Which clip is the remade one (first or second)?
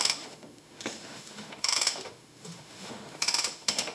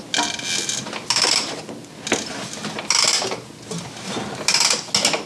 first